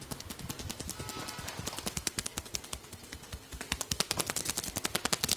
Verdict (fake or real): real